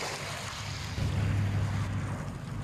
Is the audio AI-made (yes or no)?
no